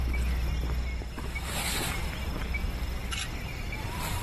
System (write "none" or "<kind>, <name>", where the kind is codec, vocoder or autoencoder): none